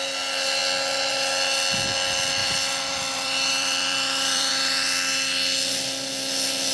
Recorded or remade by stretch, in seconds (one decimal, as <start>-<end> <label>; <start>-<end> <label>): 0.0-2.4 recorded; 2.4-4.5 remade; 4.5-6.7 recorded